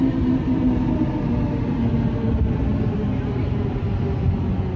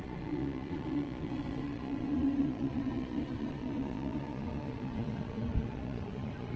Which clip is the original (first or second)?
first